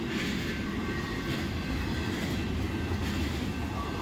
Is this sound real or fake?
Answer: real